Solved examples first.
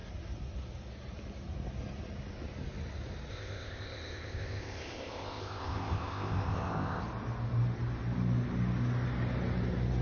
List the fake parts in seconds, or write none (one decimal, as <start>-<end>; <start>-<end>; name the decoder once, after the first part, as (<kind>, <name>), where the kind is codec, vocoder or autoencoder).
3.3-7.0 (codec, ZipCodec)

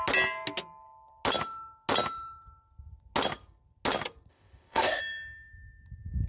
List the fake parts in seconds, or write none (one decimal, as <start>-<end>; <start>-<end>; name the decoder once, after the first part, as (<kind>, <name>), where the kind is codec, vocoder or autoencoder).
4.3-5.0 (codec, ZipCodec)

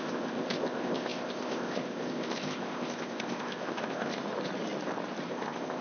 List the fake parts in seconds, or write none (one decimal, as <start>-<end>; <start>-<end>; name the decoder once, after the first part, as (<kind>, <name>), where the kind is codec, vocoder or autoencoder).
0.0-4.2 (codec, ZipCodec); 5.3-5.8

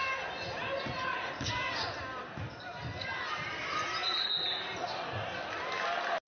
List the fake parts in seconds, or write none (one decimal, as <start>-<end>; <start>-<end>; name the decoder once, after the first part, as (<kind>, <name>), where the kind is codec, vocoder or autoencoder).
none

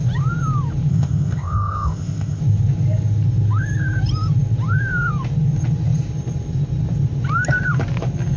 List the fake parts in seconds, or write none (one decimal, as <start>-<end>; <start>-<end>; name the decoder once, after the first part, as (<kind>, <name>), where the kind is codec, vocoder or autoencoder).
0.9-2.4 (codec, ZipCodec)